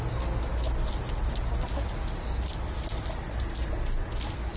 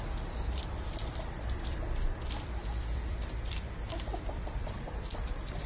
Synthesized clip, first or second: second